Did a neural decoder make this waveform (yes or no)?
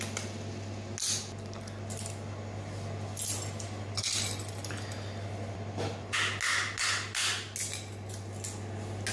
no